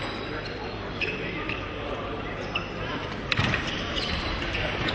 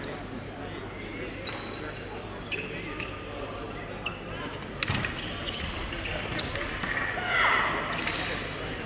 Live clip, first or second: second